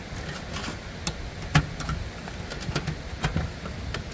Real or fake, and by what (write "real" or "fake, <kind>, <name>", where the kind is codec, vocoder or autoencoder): real